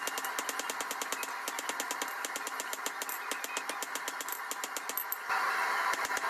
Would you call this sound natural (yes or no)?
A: yes